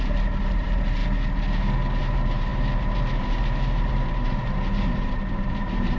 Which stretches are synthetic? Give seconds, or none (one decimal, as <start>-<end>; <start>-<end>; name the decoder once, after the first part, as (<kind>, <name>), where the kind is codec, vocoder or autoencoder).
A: 0.0-1.0 (vocoder, BigVGAN v2); 2.0-6.0